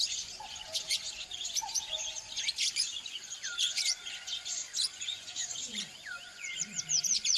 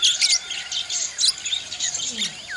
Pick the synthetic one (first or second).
first